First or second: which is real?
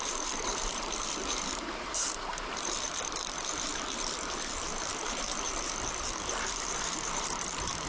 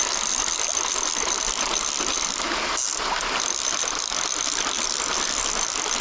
second